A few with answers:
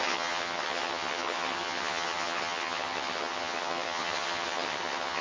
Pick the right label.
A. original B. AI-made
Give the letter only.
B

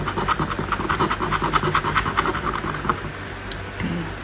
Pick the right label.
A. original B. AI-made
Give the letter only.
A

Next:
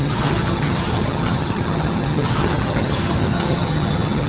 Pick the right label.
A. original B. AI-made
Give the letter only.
B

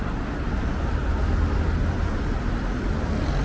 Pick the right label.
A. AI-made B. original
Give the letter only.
B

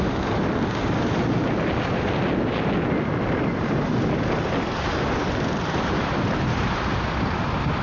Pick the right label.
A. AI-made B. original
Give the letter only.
B